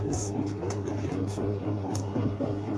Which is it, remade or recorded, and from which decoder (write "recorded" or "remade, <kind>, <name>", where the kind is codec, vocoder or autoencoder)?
remade, codec, SNAC